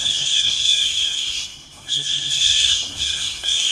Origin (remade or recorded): remade